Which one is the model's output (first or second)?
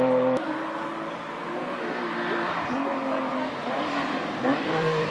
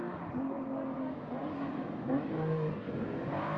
first